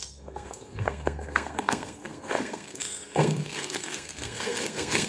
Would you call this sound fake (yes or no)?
yes